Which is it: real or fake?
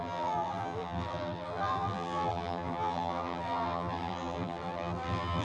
fake